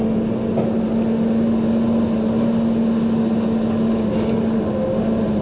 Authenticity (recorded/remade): recorded